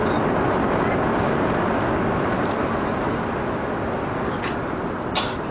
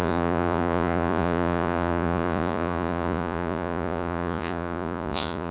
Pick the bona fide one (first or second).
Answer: first